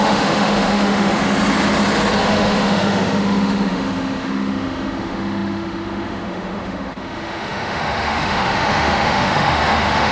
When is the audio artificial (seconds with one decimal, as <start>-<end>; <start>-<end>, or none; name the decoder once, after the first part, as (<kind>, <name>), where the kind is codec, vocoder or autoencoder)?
0.0-1.2 (autoencoder, DAC-VAE); 2.2-10.1